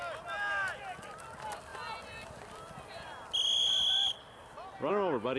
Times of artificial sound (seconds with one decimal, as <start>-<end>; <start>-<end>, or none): none